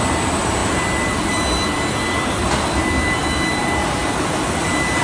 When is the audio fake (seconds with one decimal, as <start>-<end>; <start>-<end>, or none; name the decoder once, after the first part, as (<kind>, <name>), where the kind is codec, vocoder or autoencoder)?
none